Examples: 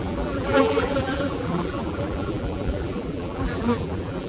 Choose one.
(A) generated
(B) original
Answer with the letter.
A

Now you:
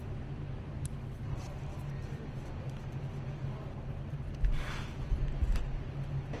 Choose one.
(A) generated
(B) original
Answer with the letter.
B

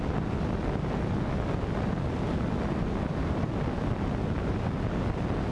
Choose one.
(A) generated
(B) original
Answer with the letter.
B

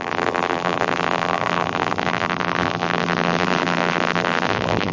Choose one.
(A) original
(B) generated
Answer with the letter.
B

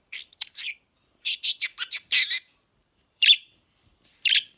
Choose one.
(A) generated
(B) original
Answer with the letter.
A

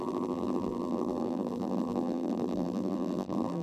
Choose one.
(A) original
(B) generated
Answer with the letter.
B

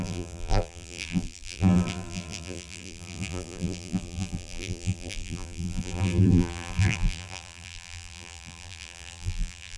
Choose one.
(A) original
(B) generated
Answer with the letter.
B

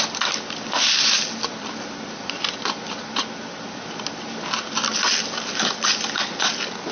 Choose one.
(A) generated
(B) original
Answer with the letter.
B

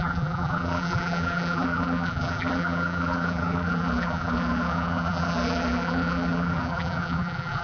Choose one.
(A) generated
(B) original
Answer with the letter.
A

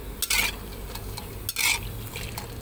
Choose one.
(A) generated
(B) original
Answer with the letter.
B